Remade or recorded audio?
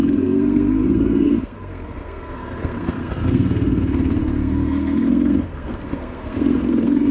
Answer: remade